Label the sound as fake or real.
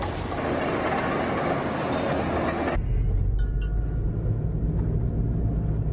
real